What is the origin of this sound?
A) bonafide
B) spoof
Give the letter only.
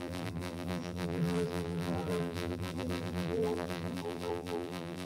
B